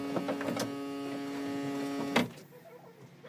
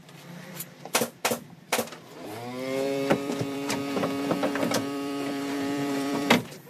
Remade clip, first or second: second